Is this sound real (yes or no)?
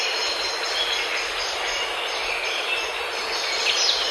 yes